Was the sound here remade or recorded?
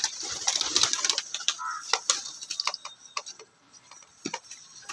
recorded